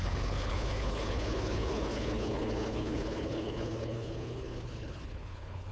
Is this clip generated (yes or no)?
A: yes